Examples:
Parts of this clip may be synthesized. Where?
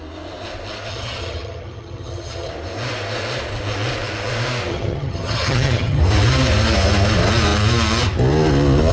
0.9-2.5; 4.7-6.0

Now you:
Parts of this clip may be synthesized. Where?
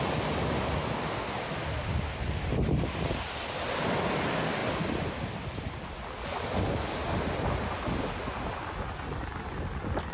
none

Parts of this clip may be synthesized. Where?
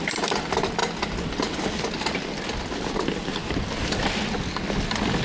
none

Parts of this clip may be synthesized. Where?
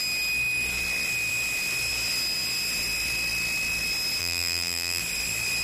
4.2-5.0